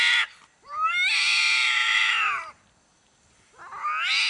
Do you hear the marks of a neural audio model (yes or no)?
no